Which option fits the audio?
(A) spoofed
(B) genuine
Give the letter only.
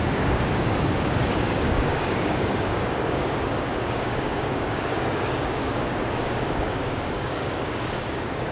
A